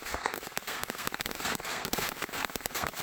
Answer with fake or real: fake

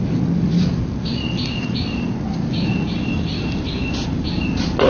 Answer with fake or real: real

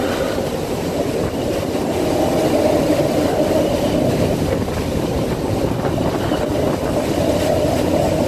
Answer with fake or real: real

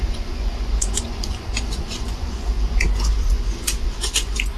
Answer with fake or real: fake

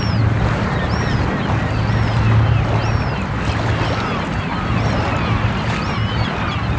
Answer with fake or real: real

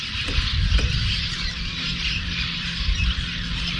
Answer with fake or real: real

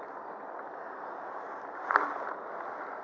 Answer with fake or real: real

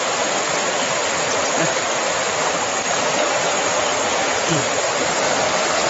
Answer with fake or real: real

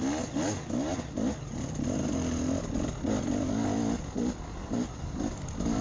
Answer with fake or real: real